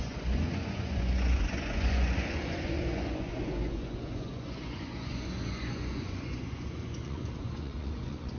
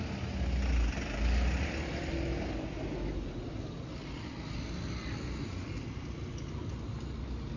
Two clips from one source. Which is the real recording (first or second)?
second